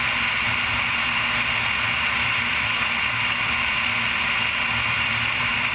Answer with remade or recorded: recorded